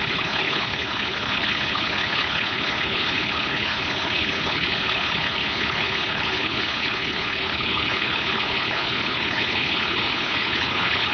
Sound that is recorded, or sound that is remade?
remade